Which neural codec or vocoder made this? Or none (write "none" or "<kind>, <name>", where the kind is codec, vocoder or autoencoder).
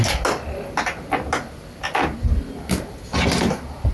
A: none